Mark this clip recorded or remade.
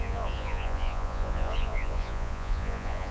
remade